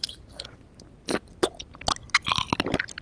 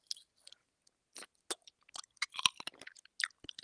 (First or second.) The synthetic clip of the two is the first